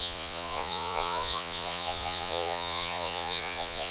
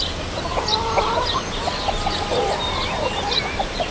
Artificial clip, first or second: first